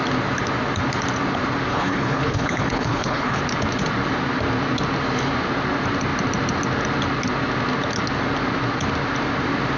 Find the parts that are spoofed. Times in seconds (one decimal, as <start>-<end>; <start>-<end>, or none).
1.7-3.4